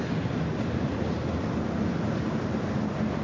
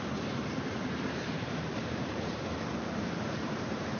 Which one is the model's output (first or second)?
second